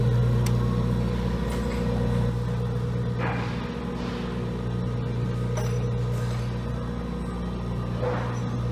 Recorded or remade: recorded